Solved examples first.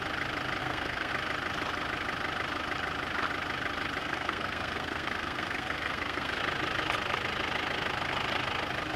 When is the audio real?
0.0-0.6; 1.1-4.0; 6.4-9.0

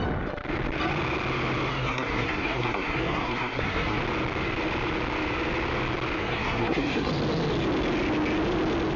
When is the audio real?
0.0-1.7; 4.0-6.2; 7.1-9.0

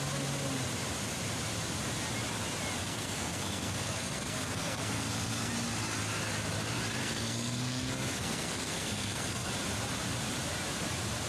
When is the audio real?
0.0-2.8; 5.5-7.0; 9.5-11.3

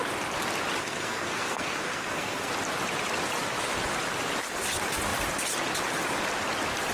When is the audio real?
0.0-0.8; 2.5-6.9

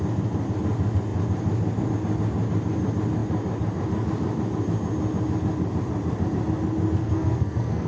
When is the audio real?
0.0-7.0

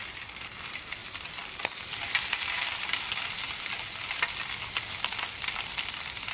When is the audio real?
0.0-6.3

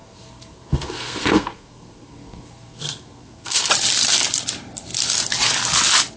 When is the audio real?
3.7-6.2